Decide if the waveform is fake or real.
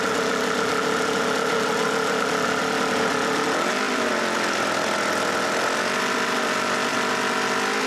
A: real